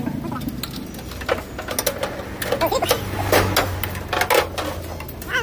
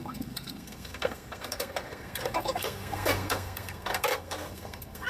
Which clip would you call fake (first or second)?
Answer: second